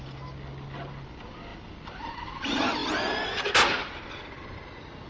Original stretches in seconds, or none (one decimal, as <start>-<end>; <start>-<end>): 0.0-5.1